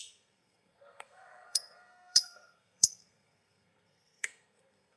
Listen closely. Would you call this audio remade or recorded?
remade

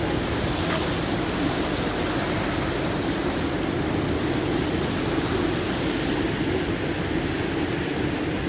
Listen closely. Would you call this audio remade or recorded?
recorded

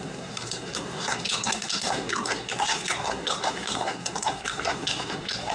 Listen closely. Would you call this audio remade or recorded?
remade